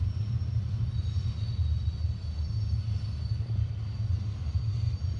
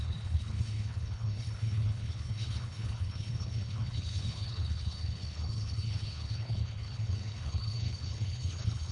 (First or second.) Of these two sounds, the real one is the first